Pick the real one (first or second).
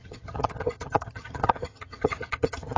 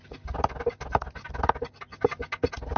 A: second